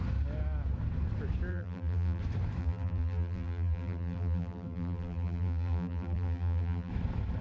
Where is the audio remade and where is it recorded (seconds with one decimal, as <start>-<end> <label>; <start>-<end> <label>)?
0.0-1.5 recorded; 1.5-2.2 remade; 2.2-2.6 recorded; 2.6-6.9 remade; 6.9-7.4 recorded